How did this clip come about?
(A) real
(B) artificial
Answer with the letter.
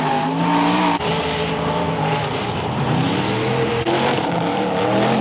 B